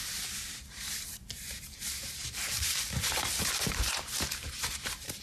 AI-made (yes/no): yes